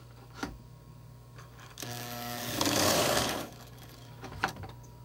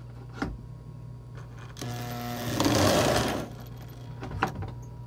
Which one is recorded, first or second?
second